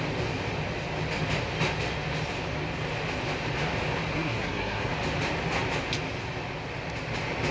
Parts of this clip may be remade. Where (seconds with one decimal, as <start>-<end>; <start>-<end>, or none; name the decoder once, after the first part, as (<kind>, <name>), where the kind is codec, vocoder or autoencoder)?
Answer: 4.1-4.9 (codec, SNAC)